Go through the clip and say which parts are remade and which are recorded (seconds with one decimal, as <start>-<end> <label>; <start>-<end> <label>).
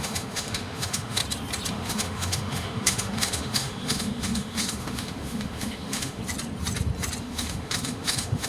0.0-1.2 remade; 1.2-1.7 recorded; 1.7-6.2 remade; 6.2-7.2 recorded; 7.2-8.5 remade